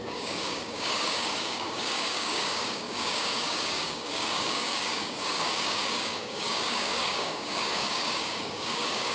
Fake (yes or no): yes